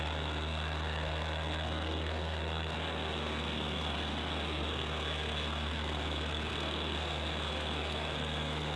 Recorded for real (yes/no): no